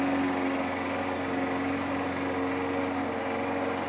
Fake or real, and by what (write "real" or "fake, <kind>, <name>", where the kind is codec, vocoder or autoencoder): real